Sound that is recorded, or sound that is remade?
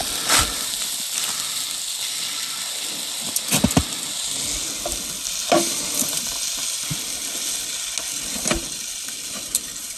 recorded